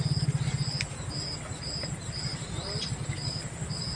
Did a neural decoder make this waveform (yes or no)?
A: no